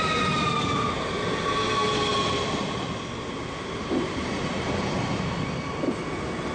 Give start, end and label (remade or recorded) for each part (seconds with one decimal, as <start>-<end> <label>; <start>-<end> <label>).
0.0-6.5 recorded